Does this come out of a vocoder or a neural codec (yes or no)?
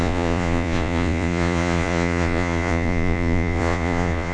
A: yes